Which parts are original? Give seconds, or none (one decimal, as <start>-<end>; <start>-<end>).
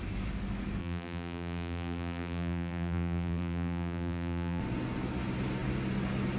0.0-0.8; 4.6-6.4